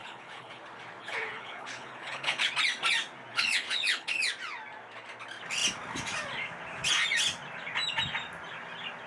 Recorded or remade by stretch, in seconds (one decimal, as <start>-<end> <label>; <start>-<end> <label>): 0.0-0.6 remade; 0.6-1.0 recorded; 1.0-2.5 remade; 2.5-3.3 recorded; 3.3-4.3 remade; 4.3-9.1 recorded